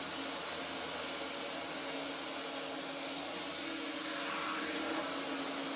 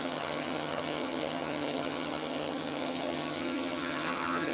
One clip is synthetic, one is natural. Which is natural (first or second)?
first